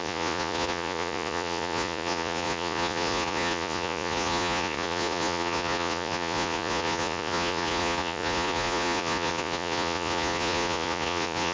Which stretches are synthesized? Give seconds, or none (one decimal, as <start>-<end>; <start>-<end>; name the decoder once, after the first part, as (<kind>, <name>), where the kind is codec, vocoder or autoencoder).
0.0-11.5 (vocoder, Vocos)